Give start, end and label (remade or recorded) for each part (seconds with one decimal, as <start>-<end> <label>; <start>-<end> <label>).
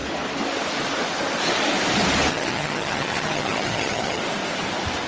0.0-2.3 recorded; 2.3-4.2 remade; 4.2-5.1 recorded